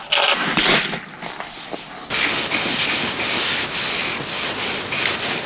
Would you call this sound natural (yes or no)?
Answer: yes